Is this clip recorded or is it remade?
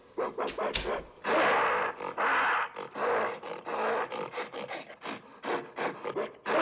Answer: recorded